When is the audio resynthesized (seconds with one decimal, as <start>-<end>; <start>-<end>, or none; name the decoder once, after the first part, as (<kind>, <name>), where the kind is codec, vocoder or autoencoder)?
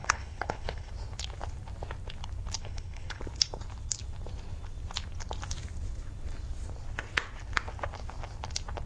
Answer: 0.0-0.9 (codec, HILCodec); 2.6-3.2